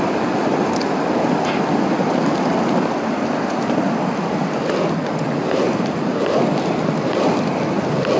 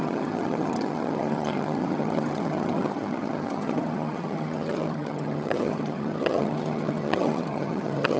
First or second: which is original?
first